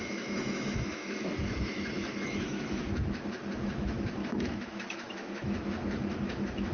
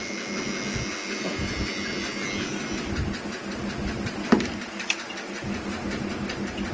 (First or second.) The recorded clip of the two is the second